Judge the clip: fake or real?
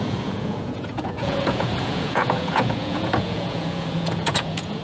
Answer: fake